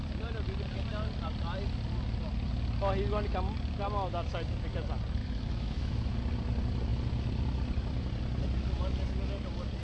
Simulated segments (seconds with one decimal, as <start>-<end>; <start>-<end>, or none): 5.2-6.1